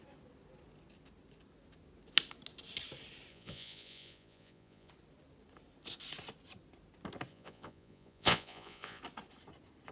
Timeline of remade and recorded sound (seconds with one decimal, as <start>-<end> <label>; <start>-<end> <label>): 0.0-3.3 recorded; 3.3-4.9 remade; 4.9-7.3 recorded; 7.3-9.0 remade; 9.0-9.9 recorded